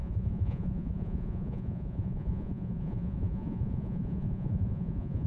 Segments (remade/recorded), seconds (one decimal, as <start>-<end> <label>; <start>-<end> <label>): 0.0-5.3 remade